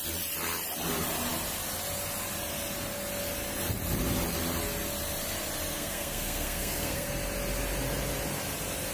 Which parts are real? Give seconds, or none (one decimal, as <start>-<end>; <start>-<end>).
0.0-5.7; 7.1-8.9